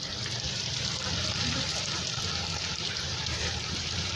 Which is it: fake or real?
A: fake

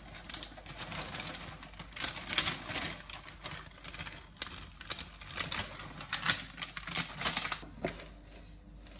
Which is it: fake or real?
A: real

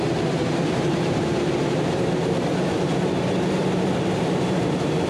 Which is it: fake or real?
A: fake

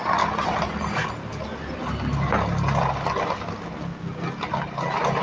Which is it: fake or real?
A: real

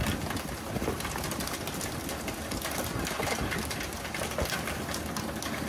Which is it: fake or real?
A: real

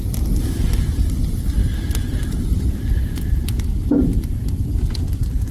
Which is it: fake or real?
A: fake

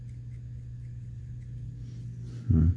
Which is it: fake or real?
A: real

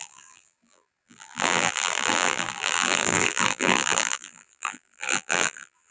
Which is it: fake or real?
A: fake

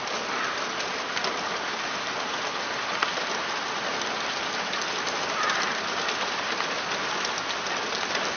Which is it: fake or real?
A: real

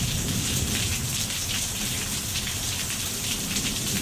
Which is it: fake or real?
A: fake